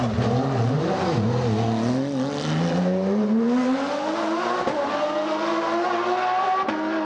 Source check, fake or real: real